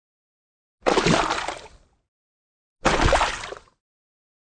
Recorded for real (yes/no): yes